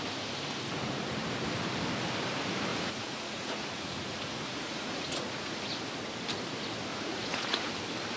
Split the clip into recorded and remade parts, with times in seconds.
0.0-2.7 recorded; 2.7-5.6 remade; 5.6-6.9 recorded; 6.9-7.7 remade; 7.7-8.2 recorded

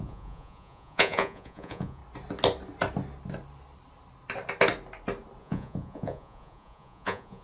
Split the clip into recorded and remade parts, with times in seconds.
0.0-2.0 remade; 2.0-5.4 recorded; 5.4-7.4 remade

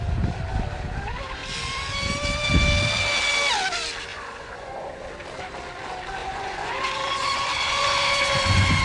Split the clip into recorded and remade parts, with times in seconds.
0.0-4.1 recorded; 4.1-5.0 remade; 5.0-6.2 recorded; 6.2-8.8 remade

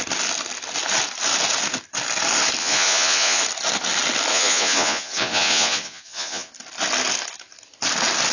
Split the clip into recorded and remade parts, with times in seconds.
0.0-2.6 recorded; 2.6-3.4 remade; 3.4-4.3 recorded; 4.3-6.5 remade; 6.5-8.3 recorded

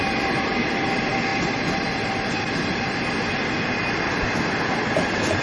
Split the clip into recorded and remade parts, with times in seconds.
0.0-5.4 recorded

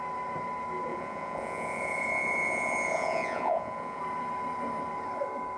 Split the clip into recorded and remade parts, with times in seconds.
0.0-0.9 recorded; 0.9-4.0 remade; 4.0-5.6 recorded

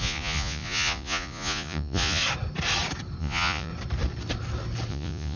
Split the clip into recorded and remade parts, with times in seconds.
0.0-2.2 remade; 2.2-3.2 recorded; 3.2-3.7 remade; 3.7-4.9 recorded; 4.9-5.4 remade